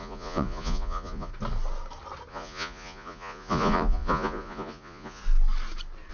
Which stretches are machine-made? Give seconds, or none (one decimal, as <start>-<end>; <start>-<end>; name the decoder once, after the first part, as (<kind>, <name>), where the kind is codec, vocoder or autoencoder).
0.0-1.3 (vocoder, Vocos); 2.3-5.2